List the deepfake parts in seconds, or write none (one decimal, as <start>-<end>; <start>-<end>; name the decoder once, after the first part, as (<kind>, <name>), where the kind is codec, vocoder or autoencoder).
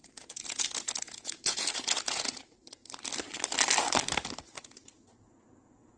0.0-2.8 (vocoder, Vocos); 4.6-6.0